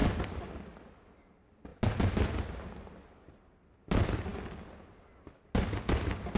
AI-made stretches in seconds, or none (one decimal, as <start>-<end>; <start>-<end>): none